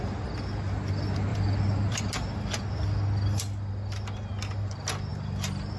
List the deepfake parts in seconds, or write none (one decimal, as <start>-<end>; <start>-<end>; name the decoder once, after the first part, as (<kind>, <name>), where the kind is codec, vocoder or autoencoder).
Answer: 1.3-2.0 (vocoder, BigVGAN v2); 5.1-5.8